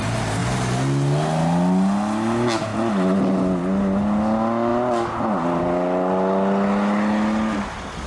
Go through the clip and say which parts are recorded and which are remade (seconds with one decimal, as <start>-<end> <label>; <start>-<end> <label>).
0.0-8.1 recorded